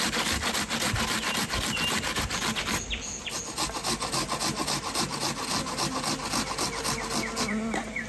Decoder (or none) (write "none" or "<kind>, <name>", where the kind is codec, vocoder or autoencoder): none